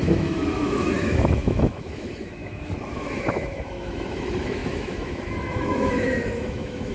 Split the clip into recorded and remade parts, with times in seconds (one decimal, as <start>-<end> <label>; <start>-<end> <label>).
0.0-6.9 remade